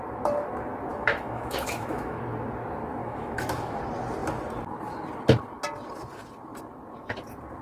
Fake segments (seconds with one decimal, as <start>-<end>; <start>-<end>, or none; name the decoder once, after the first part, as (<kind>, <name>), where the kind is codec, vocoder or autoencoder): 0.9-2.2 (autoencoder, DAC-VAE); 3.0-3.8

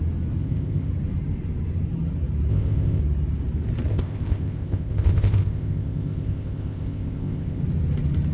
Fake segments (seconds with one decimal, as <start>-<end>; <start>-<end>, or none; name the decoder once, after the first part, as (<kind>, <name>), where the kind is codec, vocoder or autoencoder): 0.4-0.9 (codec, ZipCodec); 2.5-3.0; 3.9-7.6

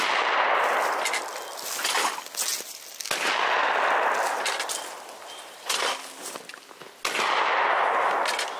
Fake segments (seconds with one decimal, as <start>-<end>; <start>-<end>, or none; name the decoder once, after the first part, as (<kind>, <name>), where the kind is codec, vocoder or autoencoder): none